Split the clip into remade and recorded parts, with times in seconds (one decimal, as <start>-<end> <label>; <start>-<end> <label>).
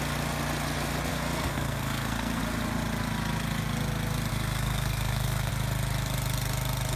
0.0-1.1 recorded; 1.1-2.4 remade; 2.4-4.3 recorded; 4.3-5.5 remade; 5.5-7.0 recorded